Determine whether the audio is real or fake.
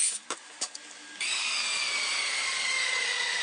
fake